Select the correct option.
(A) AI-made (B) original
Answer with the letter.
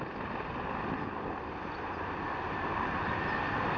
B